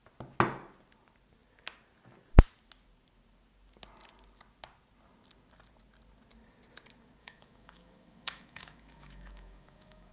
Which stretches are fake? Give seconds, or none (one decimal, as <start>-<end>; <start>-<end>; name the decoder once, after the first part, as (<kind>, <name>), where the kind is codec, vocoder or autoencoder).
7.2-10.1 (autoencoder, DAC-VAE)